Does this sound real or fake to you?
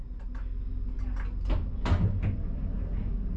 real